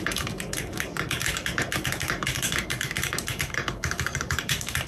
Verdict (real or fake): fake